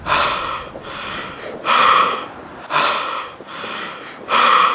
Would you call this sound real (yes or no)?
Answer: yes